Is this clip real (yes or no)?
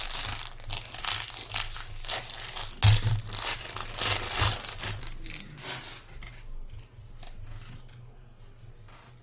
yes